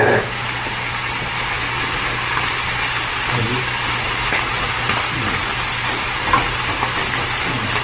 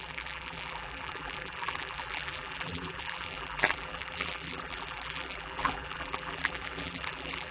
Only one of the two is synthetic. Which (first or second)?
second